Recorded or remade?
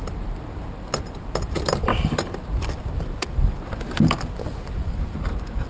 recorded